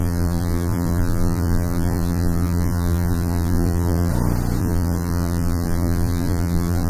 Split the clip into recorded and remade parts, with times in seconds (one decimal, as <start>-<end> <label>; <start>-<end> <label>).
0.0-4.1 remade; 4.1-4.6 recorded; 4.6-6.9 remade